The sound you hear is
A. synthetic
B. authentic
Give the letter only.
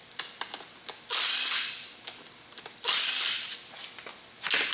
B